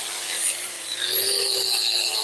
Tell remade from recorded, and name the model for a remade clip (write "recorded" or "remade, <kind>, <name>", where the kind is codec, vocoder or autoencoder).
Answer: recorded